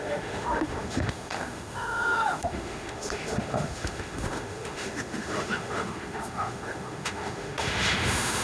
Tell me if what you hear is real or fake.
fake